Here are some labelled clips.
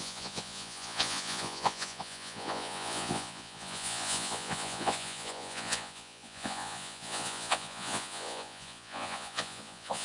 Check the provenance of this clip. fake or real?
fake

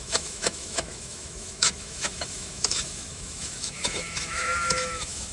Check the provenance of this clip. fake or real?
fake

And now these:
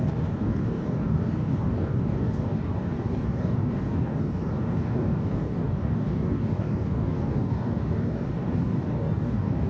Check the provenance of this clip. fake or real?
fake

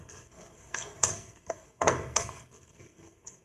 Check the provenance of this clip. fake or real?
fake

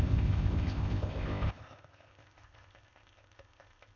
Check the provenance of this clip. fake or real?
fake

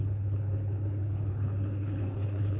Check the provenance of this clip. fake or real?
fake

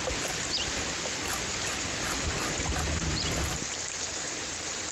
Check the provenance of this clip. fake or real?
real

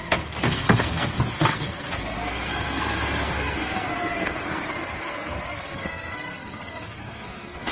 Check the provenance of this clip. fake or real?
fake